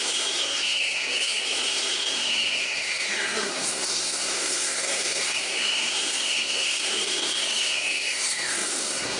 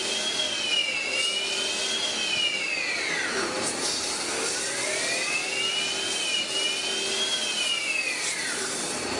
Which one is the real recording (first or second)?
second